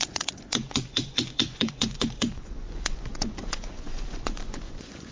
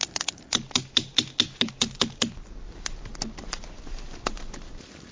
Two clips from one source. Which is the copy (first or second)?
first